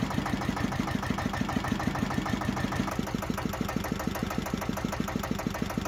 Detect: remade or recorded recorded